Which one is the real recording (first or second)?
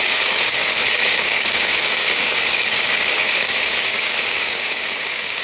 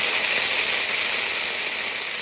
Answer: second